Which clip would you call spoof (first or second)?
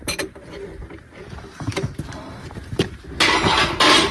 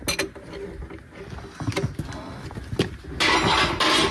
first